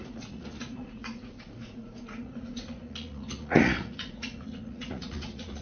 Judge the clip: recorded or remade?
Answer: remade